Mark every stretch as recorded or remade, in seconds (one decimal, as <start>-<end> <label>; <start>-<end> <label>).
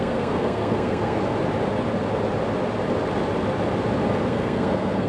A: 0.0-1.2 remade; 1.2-4.3 recorded; 4.3-5.1 remade